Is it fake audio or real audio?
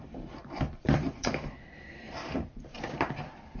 fake